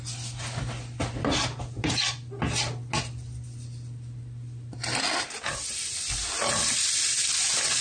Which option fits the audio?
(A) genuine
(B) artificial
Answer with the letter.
A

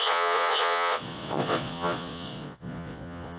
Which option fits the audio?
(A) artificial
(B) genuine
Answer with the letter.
A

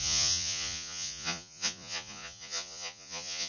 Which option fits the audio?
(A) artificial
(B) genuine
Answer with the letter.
A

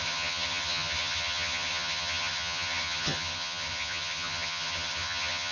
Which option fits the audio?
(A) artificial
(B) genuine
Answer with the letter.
A